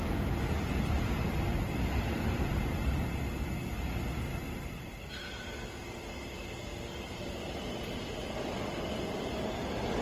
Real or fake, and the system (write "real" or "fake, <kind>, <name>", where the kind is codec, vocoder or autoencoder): real